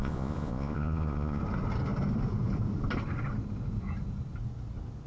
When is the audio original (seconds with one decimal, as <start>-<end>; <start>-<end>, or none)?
1.4-5.1